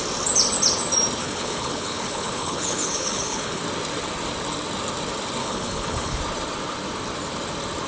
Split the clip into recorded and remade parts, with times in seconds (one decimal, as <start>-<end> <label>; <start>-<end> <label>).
0.0-1.2 recorded; 1.2-3.6 remade; 3.6-5.4 recorded; 5.4-6.2 remade; 6.2-7.9 recorded